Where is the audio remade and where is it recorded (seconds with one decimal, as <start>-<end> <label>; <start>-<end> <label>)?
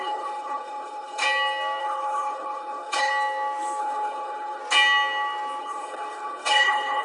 0.0-1.2 remade; 1.2-1.8 recorded; 1.8-3.1 remade; 3.1-3.8 recorded; 3.8-4.6 remade; 4.6-5.6 recorded; 5.6-7.0 remade